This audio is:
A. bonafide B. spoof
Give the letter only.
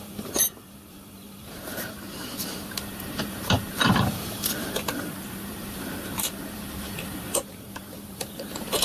B